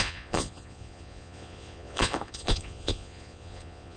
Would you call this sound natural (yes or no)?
no